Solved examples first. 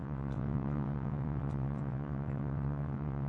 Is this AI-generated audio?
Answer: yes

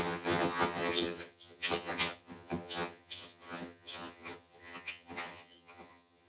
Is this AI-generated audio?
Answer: yes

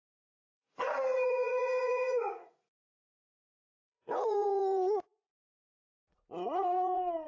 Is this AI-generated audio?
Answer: yes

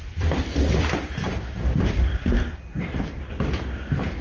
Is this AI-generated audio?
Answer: yes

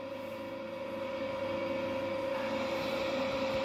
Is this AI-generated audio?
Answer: no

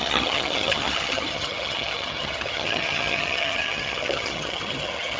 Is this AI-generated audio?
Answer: yes